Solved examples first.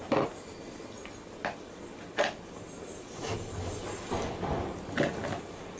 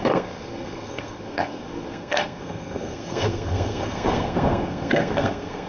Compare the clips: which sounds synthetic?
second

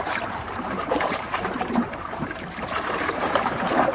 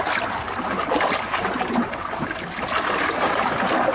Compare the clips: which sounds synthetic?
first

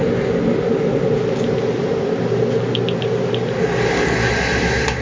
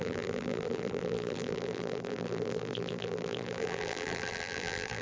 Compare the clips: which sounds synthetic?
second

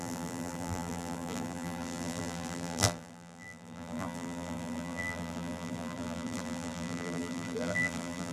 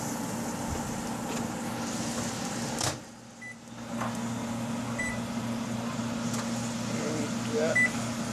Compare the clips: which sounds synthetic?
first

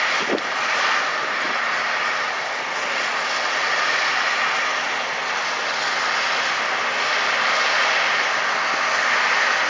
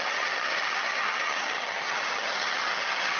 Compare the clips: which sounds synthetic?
second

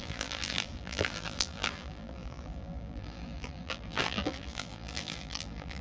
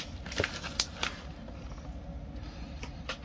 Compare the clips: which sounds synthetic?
first